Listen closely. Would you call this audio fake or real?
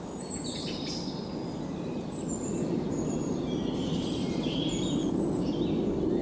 real